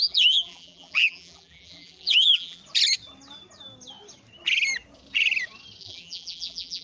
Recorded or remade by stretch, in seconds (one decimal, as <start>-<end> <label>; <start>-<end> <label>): 0.0-2.6 remade; 2.6-5.8 recorded; 5.8-6.8 remade